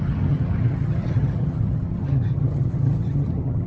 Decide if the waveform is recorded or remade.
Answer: remade